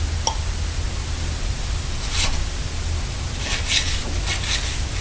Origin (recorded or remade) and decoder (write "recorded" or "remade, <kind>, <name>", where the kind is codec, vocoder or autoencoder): recorded